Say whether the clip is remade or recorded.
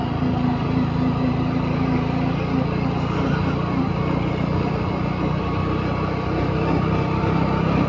recorded